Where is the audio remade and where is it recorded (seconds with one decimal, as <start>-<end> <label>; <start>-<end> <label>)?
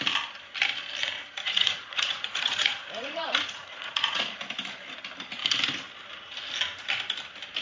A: 0.0-1.0 recorded; 1.0-4.2 remade; 4.2-7.6 recorded